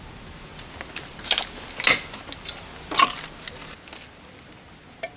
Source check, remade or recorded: recorded